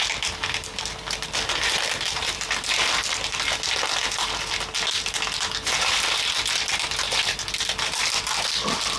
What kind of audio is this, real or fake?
real